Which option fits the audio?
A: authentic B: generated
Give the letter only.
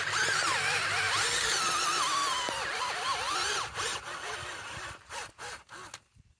A